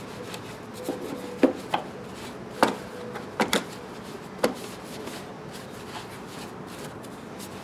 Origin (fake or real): real